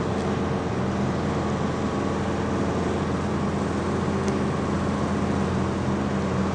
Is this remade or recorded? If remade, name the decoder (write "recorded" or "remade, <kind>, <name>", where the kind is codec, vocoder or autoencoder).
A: recorded